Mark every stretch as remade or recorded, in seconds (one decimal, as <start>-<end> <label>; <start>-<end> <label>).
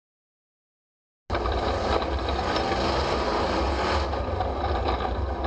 0.0-5.5 recorded